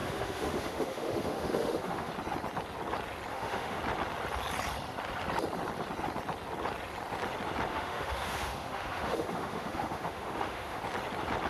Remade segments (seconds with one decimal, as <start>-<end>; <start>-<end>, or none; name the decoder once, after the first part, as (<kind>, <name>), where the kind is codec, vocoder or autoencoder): 0.0-2.1 (autoencoder, DAC-VAE); 3.3-3.8; 7.7-10.8

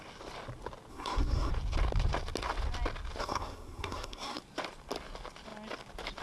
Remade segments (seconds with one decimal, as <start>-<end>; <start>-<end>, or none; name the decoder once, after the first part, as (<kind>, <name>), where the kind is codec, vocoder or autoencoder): 0.9-1.5 (codec, SNAC); 3.2-4.4

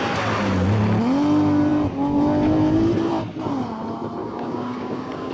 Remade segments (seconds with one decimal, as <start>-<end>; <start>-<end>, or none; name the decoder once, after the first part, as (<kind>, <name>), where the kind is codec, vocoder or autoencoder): 4.2-5.3 (codec, DAC)

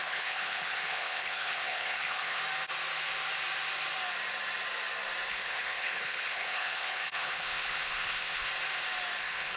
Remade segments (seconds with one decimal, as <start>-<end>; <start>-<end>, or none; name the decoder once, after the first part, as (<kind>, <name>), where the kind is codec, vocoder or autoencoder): 0.0-2.4 (codec, HILCodec); 5.3-8.5; 9.2-9.6

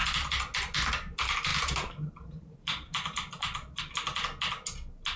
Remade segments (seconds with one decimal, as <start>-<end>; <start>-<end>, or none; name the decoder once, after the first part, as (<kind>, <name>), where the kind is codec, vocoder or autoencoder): 1.5-3.8 (vocoder, BigVGAN v2)

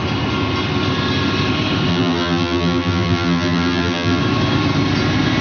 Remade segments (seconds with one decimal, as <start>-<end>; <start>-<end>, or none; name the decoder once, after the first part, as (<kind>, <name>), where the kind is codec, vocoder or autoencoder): 1.9-4.2 (vocoder, BigVGAN v2)

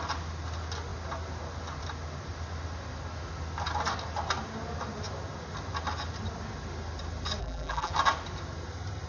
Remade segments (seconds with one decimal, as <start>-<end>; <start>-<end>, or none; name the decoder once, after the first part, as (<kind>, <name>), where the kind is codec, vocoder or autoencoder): 7.4-7.9 (vocoder, BigVGAN v2)

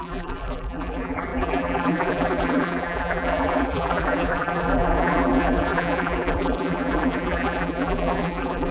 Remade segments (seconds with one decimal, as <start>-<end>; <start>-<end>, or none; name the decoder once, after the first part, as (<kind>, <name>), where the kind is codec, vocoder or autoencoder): 0.0-8.7 (vocoder, BigVGAN v2)